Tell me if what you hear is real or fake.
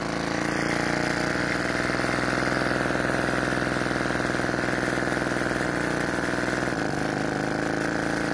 real